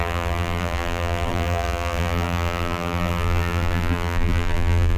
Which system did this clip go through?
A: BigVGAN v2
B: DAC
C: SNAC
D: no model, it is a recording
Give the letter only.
A